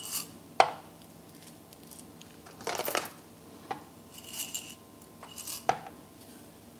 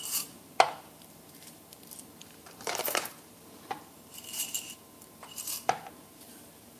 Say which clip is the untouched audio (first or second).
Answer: first